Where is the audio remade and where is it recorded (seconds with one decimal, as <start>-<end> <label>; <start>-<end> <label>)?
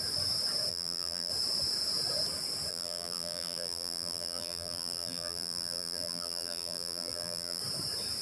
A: 0.0-0.7 recorded; 0.7-1.3 remade; 1.3-2.7 recorded; 2.7-7.6 remade; 7.6-8.2 recorded